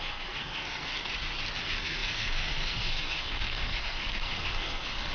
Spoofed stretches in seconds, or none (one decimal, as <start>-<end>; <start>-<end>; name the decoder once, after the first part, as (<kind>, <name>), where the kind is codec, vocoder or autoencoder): 0.0-0.9 (codec, SNAC); 1.6-5.1